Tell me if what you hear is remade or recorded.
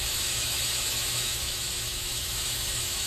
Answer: remade